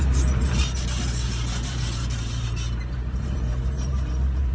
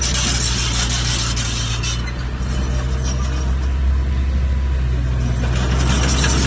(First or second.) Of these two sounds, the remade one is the first